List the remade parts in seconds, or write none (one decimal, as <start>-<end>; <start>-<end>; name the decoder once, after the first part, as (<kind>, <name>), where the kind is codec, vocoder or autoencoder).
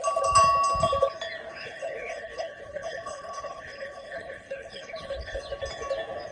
1.6-5.4 (codec, HILCodec)